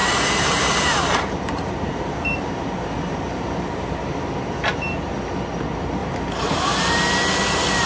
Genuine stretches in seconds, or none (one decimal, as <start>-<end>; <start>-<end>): 4.2-6.0; 7.0-7.9